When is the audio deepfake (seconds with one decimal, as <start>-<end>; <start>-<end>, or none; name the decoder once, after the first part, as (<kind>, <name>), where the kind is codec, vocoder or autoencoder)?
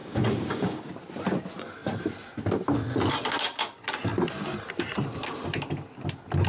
0.0-0.8 (codec, DAC)